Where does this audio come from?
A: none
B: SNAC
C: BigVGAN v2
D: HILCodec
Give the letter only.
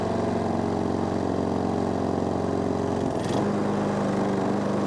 A